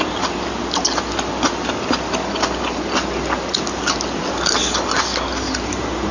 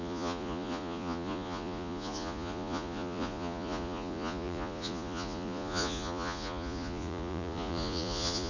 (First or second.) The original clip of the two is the first